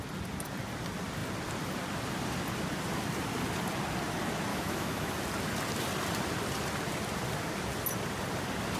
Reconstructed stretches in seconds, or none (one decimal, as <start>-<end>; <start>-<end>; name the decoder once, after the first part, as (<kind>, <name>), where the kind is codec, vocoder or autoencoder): 4.5-5.1 (autoencoder, DAC-VAE)